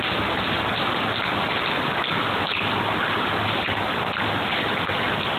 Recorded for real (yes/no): yes